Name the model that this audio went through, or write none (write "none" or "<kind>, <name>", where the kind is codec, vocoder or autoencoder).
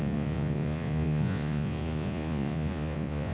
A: vocoder, Vocos